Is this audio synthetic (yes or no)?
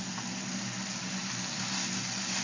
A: no